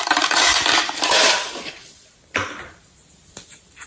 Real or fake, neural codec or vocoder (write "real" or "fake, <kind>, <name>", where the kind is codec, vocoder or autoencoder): fake, vocoder, BigVGAN v2